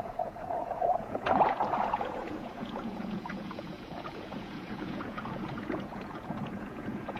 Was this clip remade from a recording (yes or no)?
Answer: yes